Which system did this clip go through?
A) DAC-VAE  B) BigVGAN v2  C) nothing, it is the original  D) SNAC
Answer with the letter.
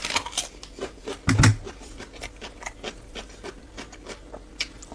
C